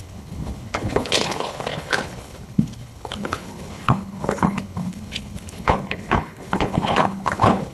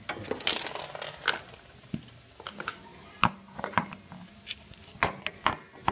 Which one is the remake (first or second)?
first